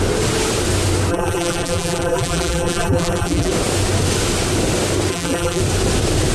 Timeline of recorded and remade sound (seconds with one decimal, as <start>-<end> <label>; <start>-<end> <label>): 0.0-1.1 recorded; 1.1-3.5 remade; 3.5-5.1 recorded; 5.1-5.6 remade; 5.6-6.3 recorded